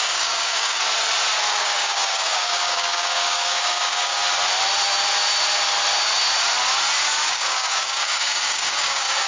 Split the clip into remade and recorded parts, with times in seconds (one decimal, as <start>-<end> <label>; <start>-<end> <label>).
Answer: 0.0-0.8 remade; 0.8-1.6 recorded; 1.6-4.2 remade; 4.2-7.3 recorded; 7.3-9.3 remade

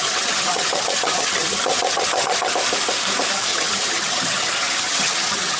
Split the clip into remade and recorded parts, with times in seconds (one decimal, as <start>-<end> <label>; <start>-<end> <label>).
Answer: 0.0-2.5 remade; 2.5-3.5 recorded; 3.5-5.6 remade

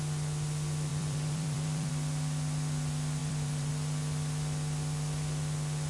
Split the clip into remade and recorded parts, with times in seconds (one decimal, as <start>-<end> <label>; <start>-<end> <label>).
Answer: 0.0-0.9 recorded; 0.9-1.9 remade; 1.9-3.2 recorded; 3.2-3.7 remade; 3.7-5.9 recorded